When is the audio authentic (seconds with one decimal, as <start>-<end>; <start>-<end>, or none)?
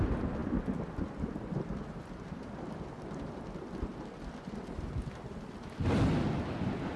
0.0-7.0